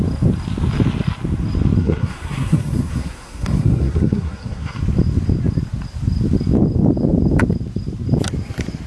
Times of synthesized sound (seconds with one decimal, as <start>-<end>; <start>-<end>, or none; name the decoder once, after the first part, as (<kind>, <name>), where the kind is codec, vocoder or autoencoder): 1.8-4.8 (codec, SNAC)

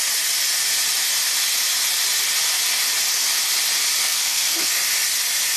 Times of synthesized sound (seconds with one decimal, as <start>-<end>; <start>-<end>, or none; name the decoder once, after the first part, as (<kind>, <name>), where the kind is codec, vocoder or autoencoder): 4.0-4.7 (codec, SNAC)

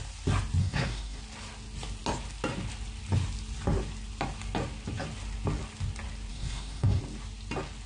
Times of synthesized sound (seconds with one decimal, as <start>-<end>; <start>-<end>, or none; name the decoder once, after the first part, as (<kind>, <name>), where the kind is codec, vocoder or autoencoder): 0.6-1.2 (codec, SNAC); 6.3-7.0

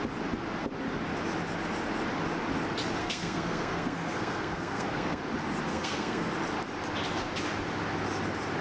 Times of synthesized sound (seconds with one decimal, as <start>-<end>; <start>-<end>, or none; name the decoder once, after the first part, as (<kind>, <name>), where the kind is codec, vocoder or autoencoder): 3.0-5.2 (codec, SNAC); 5.7-6.3

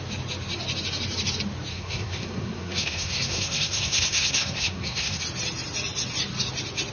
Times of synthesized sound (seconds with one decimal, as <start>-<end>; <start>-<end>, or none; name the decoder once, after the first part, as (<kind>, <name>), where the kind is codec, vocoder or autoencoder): 1.7-5.2 (codec, SNAC)